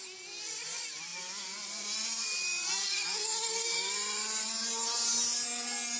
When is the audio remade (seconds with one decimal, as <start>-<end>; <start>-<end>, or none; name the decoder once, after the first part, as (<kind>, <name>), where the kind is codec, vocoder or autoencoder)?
none